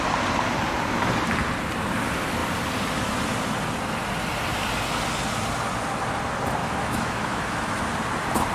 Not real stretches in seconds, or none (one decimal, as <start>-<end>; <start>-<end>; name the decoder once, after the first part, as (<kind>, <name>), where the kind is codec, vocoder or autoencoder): 6.6-7.8 (autoencoder, DAC-VAE)